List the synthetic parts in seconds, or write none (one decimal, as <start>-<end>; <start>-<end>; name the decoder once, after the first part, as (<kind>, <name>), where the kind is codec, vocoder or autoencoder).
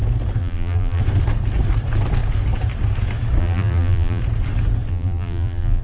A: 0.4-1.0 (vocoder, BigVGAN v2); 3.4-4.2; 4.9-5.8